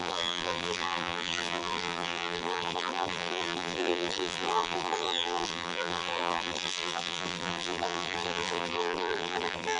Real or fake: fake